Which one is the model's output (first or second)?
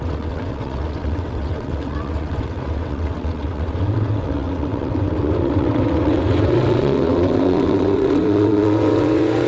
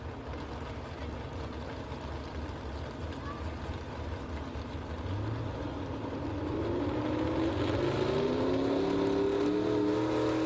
first